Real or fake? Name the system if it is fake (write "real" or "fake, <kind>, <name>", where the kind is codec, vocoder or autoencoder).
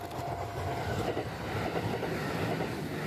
real